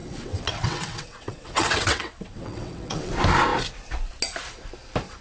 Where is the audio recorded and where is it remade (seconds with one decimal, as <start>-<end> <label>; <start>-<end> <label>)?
0.0-3.1 remade; 3.1-5.2 recorded